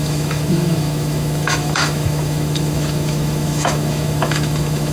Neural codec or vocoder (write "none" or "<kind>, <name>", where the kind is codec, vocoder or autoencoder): autoencoder, DAC-VAE